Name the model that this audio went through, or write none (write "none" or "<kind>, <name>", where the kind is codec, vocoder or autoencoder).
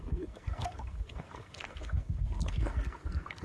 codec, SNAC